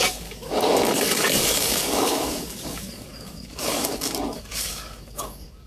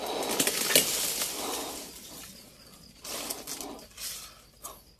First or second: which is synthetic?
first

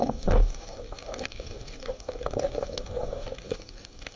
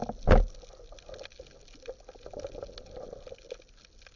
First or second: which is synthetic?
first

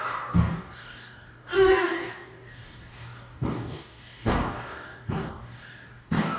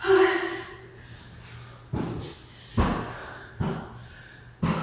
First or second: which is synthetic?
first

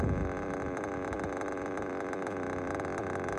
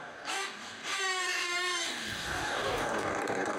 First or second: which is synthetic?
second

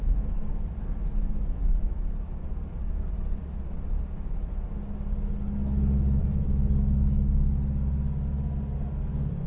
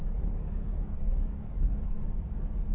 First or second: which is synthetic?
second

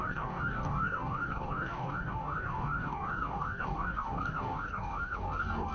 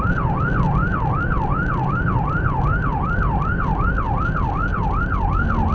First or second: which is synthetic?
first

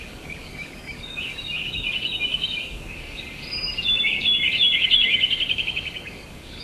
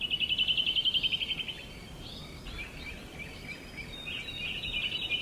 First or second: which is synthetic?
first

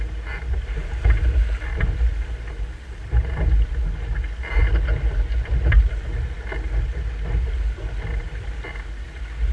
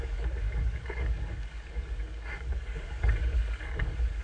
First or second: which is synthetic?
second